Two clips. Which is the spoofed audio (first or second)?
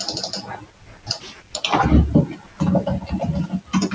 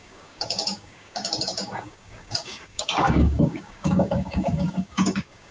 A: second